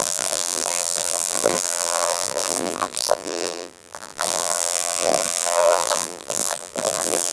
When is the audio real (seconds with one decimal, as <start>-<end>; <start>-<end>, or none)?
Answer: none